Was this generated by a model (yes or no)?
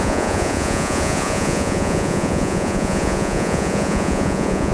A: yes